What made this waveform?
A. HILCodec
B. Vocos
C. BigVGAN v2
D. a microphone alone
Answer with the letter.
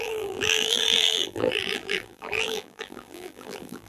C